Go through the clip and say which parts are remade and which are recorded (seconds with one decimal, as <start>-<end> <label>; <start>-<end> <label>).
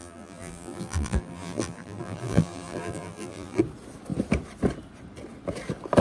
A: 0.0-3.6 remade; 3.6-6.0 recorded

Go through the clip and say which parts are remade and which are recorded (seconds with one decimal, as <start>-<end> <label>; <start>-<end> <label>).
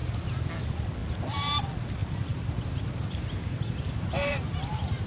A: 0.0-2.0 recorded; 2.0-5.1 remade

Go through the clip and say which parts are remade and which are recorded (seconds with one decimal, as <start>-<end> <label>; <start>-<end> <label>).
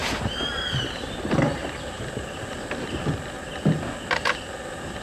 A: 0.0-2.9 remade; 2.9-5.0 recorded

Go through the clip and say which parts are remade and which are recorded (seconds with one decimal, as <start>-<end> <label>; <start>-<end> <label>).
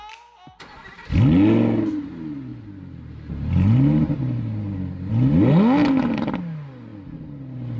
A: 0.0-2.5 recorded; 2.5-5.1 remade; 5.1-7.8 recorded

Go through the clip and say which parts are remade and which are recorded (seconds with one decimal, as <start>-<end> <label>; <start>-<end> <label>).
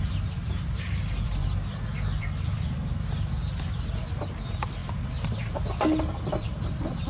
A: 0.0-1.4 remade; 1.4-2.2 recorded; 2.2-4.8 remade; 4.8-6.0 recorded; 6.0-7.1 remade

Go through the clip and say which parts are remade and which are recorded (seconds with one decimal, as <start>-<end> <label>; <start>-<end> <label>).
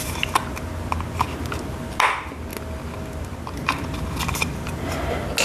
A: 0.0-5.4 recorded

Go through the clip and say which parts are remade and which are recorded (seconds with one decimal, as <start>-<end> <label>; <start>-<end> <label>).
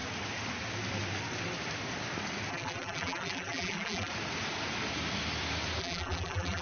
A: 0.0-2.5 recorded; 2.5-4.1 remade; 4.1-5.8 recorded; 5.8-6.6 remade